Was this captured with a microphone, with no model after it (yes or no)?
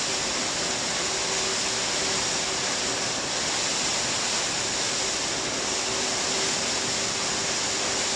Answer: yes